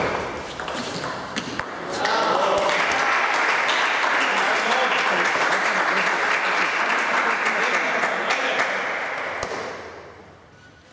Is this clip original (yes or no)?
yes